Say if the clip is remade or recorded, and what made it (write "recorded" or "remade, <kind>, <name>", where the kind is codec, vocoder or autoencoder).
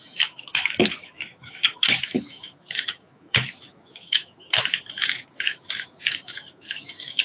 remade, autoencoder, DAC-VAE